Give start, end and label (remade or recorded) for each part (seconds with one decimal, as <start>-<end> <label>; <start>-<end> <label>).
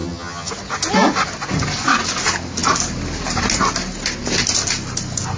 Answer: 0.0-0.5 remade; 0.5-5.4 recorded